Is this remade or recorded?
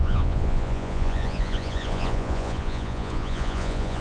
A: remade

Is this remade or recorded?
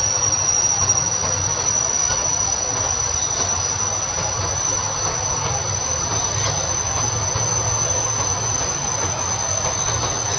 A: recorded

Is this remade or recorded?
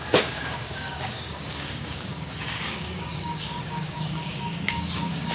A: remade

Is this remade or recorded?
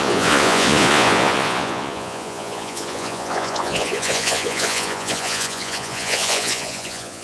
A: remade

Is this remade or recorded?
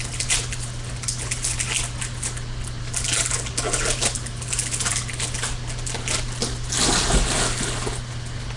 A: recorded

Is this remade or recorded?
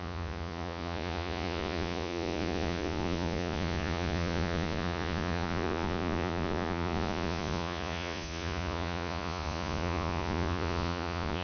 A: remade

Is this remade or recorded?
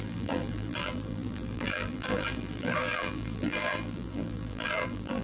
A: remade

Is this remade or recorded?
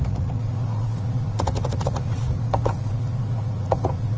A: remade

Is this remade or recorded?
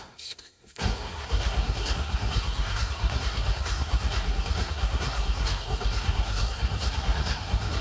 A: remade